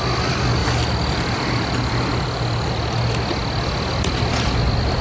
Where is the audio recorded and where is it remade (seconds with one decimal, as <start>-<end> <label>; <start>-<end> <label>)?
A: 0.0-0.6 recorded; 0.6-2.7 remade; 2.7-5.0 recorded